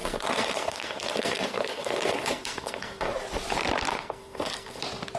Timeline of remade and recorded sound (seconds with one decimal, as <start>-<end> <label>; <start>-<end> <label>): 0.0-3.1 remade; 3.1-3.9 recorded; 3.9-4.8 remade; 4.8-5.2 recorded